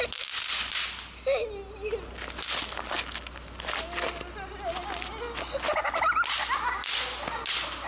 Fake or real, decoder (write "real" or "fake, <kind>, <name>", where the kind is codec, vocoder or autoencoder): real